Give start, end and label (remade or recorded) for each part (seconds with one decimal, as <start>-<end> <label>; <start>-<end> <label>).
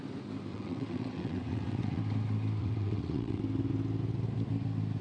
0.0-0.5 recorded; 0.5-2.0 remade; 2.0-2.6 recorded; 2.6-3.4 remade; 3.4-5.0 recorded